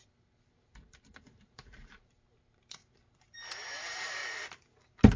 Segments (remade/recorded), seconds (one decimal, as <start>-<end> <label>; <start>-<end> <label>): 0.0-4.2 remade; 4.2-5.2 recorded